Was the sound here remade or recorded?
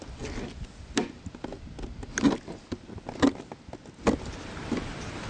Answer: recorded